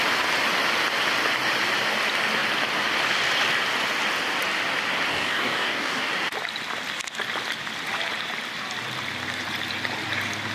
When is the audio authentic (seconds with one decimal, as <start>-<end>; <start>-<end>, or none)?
0.0-5.1; 6.1-10.5